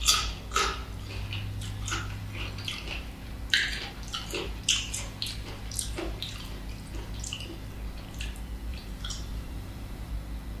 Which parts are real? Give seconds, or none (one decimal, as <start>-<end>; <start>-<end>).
0.0-8.7; 10.1-10.6